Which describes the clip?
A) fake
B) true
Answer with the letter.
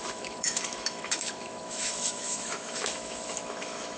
A